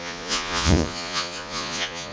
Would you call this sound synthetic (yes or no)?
yes